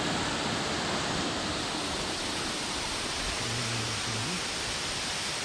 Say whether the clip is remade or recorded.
recorded